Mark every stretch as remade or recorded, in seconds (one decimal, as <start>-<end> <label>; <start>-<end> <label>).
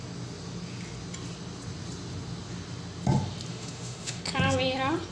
0.0-3.5 recorded; 3.5-4.2 remade; 4.2-5.1 recorded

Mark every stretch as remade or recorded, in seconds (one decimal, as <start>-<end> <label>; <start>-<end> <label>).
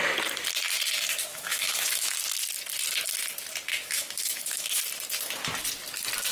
0.0-1.3 recorded; 1.3-2.2 remade; 2.2-3.7 recorded; 3.7-4.8 remade; 4.8-6.3 recorded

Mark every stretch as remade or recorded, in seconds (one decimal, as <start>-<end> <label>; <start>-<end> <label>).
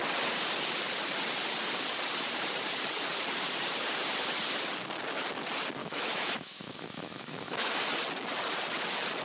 0.0-5.8 recorded; 5.8-7.7 remade; 7.7-9.2 recorded